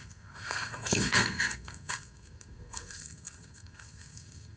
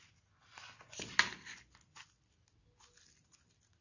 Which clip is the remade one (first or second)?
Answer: first